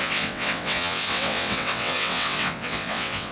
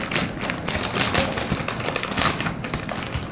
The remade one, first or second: first